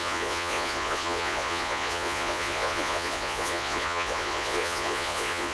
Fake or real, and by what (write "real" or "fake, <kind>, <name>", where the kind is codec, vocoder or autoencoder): fake, vocoder, Vocos